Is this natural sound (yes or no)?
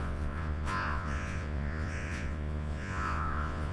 no